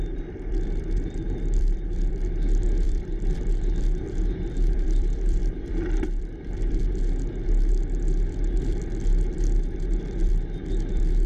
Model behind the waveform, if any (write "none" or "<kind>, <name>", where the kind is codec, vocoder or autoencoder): vocoder, BigVGAN v2